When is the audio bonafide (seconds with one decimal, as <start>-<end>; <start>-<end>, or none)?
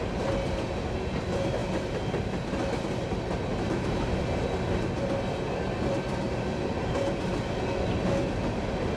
0.0-9.0